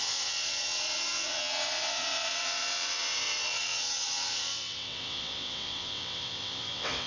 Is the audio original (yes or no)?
no